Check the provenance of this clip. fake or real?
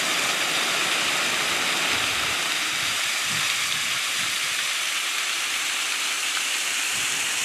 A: real